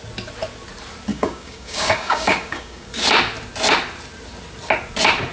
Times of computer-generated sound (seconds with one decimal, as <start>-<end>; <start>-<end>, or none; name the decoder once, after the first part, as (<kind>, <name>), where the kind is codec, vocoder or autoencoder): 1.1-2.9 (codec, DAC)